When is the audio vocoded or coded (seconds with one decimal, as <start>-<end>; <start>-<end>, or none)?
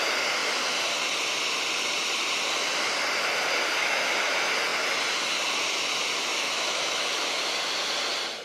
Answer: 3.8-4.3; 6.3-7.5